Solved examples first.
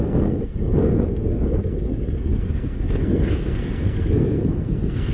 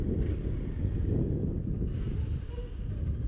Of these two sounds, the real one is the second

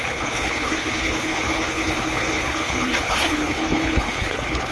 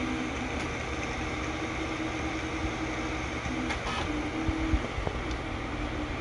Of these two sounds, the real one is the second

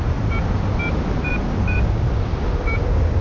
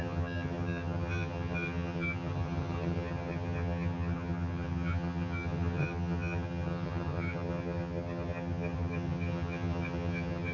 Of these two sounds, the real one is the first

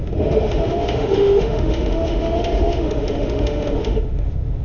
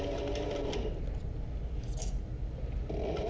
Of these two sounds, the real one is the second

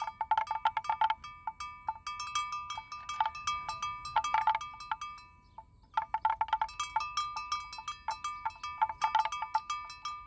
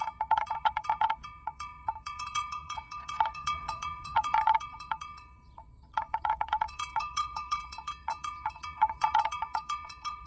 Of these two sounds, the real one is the first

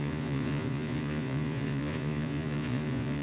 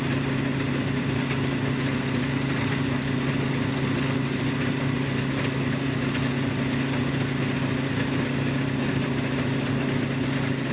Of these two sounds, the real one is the second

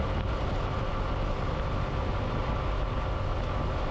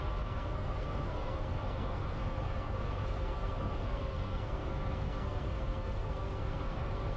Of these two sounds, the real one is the first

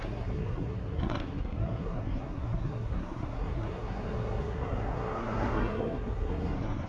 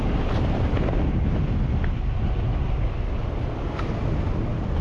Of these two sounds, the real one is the second